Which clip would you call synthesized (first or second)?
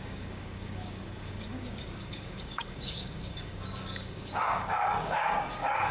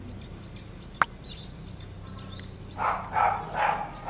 first